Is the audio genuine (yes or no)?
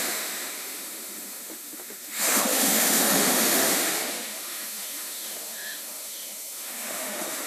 no